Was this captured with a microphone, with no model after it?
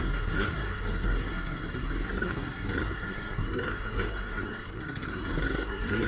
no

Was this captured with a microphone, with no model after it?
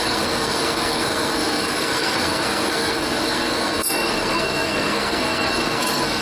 no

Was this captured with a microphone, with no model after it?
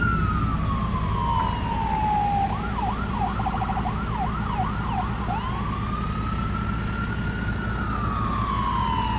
yes